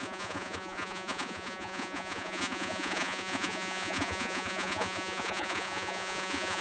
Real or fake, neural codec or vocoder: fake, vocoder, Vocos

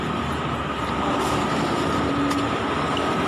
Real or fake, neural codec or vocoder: real